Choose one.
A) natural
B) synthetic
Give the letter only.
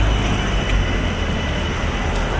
A